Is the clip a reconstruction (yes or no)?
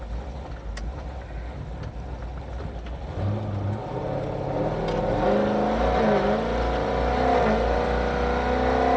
no